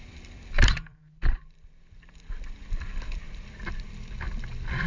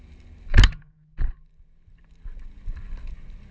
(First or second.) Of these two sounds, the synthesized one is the first